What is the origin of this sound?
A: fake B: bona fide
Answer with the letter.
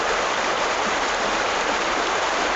B